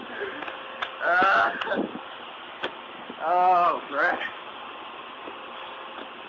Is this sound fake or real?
real